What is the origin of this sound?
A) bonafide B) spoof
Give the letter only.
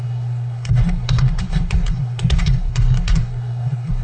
B